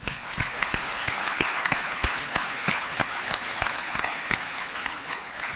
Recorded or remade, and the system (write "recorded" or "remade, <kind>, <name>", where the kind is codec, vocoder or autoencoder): remade, codec, HILCodec